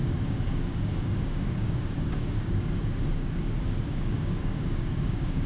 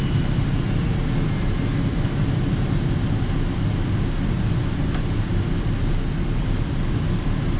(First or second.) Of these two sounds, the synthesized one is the first